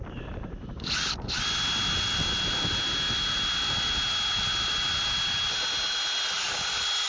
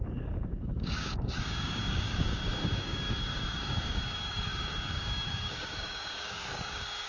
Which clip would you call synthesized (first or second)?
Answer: second